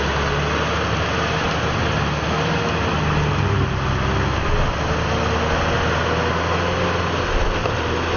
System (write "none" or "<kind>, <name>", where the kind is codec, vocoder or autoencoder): none